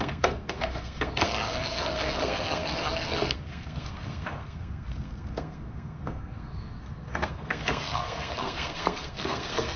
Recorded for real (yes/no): no